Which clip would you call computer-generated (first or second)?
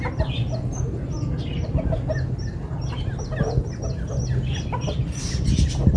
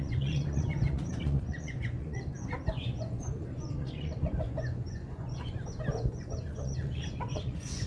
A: second